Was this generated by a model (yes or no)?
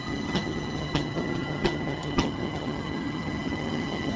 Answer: yes